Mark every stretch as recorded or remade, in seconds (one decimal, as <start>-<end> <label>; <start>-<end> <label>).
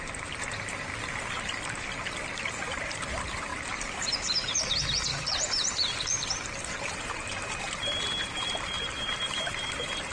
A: 0.0-0.9 remade; 0.9-2.4 recorded; 2.4-10.1 remade